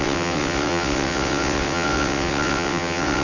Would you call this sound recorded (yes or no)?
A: no